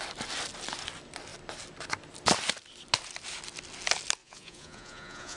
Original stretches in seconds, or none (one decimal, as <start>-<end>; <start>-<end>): 0.0-4.2

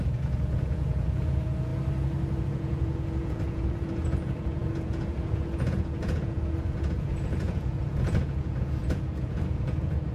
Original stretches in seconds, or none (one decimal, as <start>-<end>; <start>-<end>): 1.7-2.4

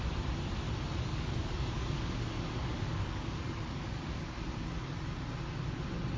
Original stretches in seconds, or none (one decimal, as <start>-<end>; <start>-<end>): 0.0-1.1; 4.5-6.2

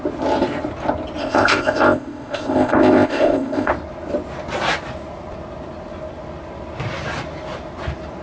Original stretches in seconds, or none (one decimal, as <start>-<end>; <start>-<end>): 0.0-1.2; 3.7-8.2

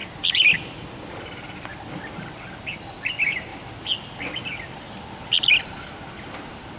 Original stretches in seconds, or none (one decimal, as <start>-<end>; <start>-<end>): 0.0-6.8

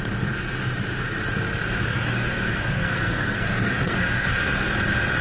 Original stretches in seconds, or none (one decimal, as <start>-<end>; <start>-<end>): 0.0-1.9; 4.7-5.2

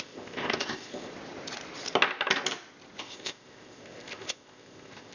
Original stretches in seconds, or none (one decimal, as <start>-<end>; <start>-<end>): 1.1-3.0